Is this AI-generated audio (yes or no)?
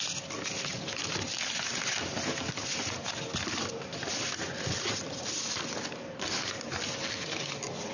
no